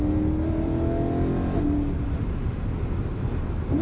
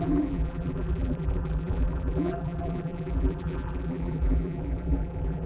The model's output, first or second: second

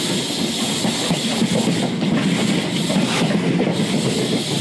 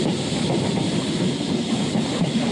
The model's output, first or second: second